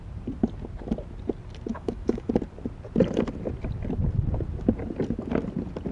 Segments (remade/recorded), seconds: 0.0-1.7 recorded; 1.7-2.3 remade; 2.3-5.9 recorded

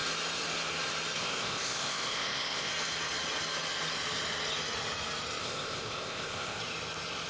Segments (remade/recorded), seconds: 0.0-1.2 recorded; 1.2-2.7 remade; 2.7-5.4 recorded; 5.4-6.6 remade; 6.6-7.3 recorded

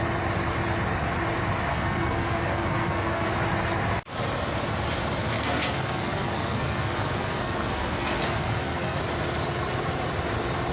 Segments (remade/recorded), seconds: 0.0-1.7 recorded; 1.7-3.3 remade; 3.3-5.2 recorded; 5.2-9.0 remade; 9.0-10.7 recorded

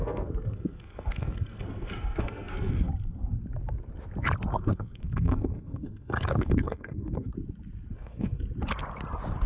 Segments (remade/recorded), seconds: 0.0-2.9 remade; 2.9-4.5 recorded; 4.5-7.3 remade; 7.3-7.9 recorded; 7.9-8.4 remade; 8.4-9.5 recorded

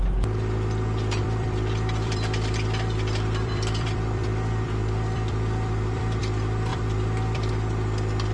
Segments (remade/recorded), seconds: 0.0-1.2 recorded; 1.2-6.2 remade; 6.2-6.7 recorded; 6.7-7.5 remade; 7.5-8.3 recorded

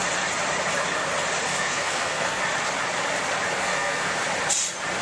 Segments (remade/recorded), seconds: 0.0-1.5 recorded; 1.5-2.4 remade; 2.4-3.6 recorded; 3.6-4.1 remade; 4.1-5.0 recorded

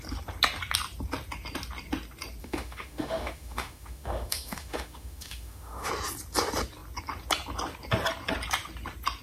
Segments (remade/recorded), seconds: 0.0-2.4 recorded; 2.4-5.9 remade; 5.9-9.2 recorded